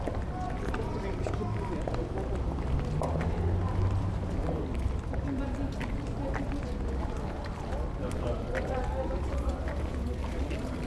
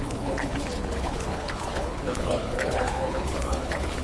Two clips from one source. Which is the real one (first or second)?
first